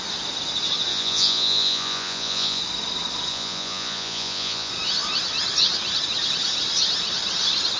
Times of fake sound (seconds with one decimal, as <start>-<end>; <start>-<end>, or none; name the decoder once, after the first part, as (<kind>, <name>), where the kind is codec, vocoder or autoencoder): 0.9-2.6 (vocoder, Vocos); 3.3-4.7